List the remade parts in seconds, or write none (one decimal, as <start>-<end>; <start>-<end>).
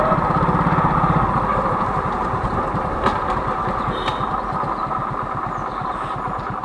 1.5-3.1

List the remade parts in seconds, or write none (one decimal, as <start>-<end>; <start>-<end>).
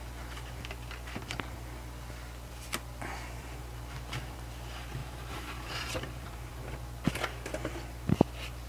5.0-6.5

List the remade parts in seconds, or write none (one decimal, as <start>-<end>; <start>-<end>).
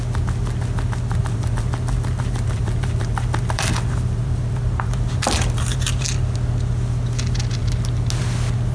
1.2-6.2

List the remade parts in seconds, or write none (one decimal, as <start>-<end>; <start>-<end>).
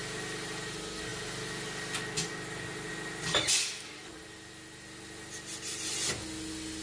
none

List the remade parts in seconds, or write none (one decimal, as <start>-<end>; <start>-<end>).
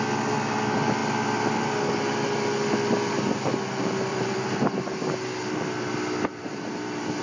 4.1-4.8; 6.3-7.2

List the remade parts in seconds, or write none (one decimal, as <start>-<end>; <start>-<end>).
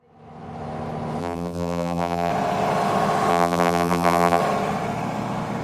1.2-2.3; 3.3-4.4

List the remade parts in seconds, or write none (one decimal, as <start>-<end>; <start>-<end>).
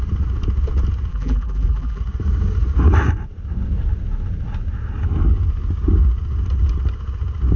1.1-2.0